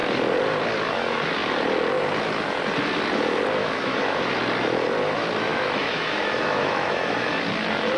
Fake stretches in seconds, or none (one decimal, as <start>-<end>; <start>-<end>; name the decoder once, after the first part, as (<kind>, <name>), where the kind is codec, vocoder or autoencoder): 3.6-4.2 (autoencoder, DAC-VAE); 5.5-7.3